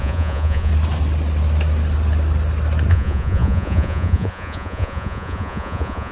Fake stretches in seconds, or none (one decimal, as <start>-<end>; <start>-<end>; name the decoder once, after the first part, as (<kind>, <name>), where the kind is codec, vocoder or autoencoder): 0.0-0.7 (vocoder, Vocos); 2.9-6.1